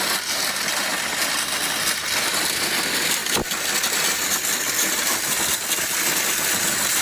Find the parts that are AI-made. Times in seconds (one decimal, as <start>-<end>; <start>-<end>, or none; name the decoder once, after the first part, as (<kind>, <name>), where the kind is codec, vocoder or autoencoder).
none